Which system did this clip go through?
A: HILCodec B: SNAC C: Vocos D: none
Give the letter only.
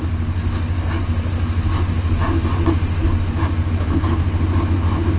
D